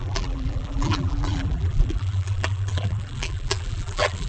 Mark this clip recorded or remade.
remade